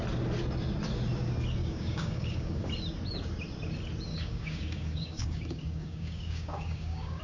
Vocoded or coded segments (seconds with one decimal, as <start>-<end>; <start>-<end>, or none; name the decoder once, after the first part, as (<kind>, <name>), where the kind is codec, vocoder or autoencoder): 1.6-2.7 (codec, DAC); 4.1-7.2